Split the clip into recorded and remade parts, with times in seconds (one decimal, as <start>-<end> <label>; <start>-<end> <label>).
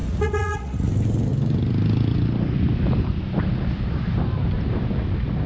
0.0-0.9 remade; 0.9-5.5 recorded